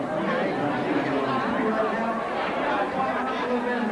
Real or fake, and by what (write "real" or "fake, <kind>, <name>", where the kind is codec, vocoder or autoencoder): real